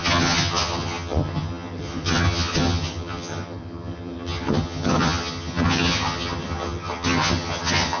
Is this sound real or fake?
fake